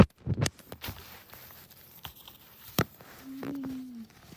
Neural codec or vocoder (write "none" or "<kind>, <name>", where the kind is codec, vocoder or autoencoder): vocoder, BigVGAN v2